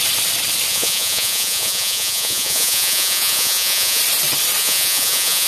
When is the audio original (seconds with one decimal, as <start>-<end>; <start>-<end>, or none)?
0.0-0.7; 4.0-4.6